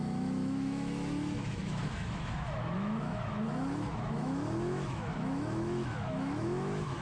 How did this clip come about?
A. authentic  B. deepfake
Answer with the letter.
B